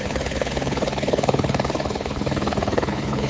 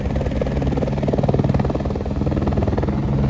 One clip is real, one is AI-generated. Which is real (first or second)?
second